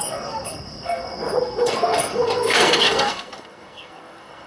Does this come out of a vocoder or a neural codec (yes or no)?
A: yes